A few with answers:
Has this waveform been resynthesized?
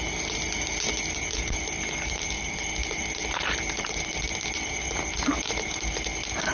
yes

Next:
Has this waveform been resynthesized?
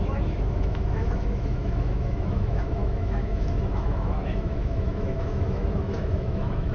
yes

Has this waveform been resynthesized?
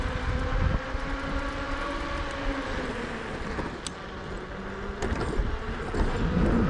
no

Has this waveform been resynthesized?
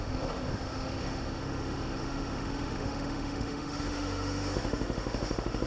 yes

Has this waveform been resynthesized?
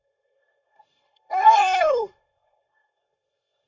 yes